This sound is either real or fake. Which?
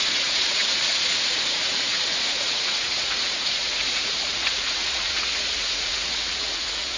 fake